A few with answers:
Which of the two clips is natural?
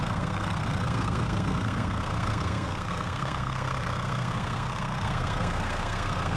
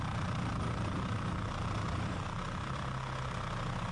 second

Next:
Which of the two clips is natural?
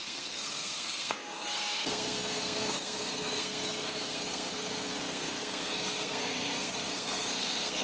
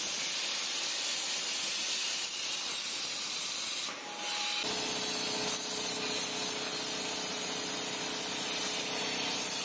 second